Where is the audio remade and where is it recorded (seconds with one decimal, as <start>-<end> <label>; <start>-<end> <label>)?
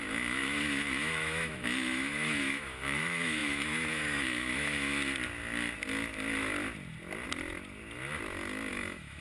0.0-4.9 remade; 4.9-8.7 recorded; 8.7-9.2 remade